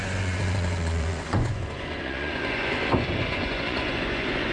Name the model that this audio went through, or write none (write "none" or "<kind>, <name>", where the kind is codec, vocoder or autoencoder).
vocoder, Vocos